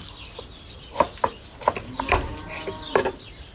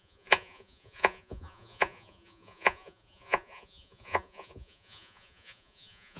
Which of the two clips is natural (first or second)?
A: first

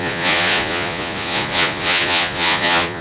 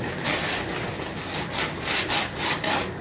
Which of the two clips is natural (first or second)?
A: second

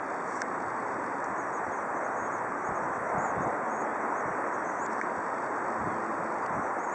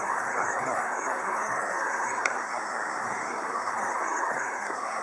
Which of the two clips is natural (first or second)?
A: first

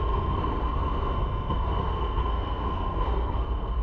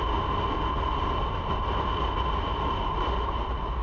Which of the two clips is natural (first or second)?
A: second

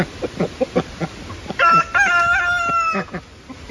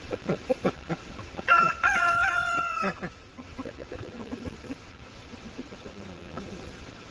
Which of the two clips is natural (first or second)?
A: first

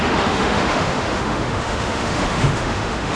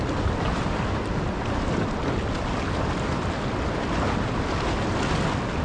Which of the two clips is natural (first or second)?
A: second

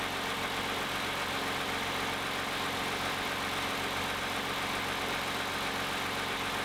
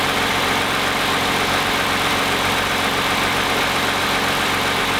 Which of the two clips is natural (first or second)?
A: first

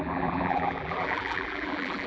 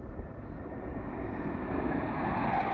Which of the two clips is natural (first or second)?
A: second